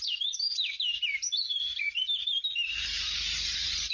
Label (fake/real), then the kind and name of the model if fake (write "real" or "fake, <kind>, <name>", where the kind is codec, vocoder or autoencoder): fake, vocoder, BigVGAN v2